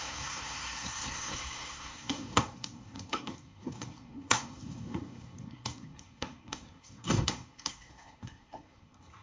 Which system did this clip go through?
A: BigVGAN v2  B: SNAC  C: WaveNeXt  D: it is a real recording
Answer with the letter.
B